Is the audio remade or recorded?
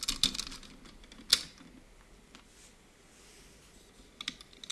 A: recorded